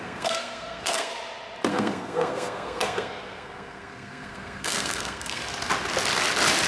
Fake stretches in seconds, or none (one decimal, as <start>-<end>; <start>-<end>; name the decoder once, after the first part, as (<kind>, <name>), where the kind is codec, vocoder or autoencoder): 0.0-1.1 (codec, SNAC); 1.7-5.4